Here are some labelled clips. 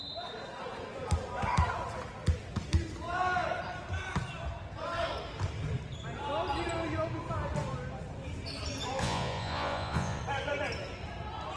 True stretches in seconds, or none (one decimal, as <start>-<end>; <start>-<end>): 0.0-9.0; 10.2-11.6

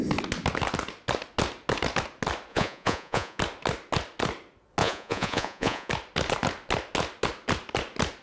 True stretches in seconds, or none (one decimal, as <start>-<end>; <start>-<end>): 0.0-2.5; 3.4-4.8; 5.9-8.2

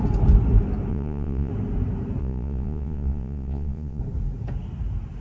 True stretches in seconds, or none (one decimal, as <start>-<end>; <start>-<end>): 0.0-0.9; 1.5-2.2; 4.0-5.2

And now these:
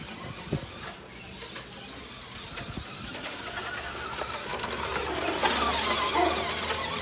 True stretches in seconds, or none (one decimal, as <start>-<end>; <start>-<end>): 0.0-7.0

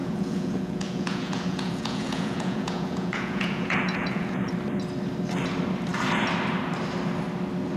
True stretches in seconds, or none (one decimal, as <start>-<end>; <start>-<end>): 4.5-7.8

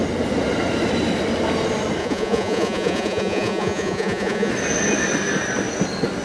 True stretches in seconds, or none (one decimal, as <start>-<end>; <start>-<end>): 0.0-2.0; 4.5-6.2

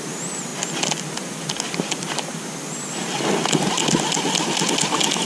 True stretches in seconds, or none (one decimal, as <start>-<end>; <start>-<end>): 0.0-5.2